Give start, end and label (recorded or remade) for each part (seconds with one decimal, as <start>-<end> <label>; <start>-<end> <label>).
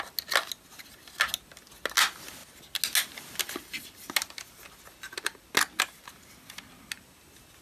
0.0-7.6 recorded